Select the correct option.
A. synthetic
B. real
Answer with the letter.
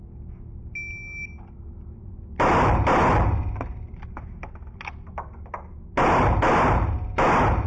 B